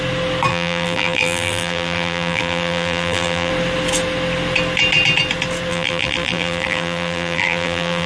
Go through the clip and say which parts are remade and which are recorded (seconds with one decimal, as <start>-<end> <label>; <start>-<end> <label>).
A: 0.0-0.5 recorded; 0.5-3.5 remade; 3.5-5.7 recorded; 5.7-8.1 remade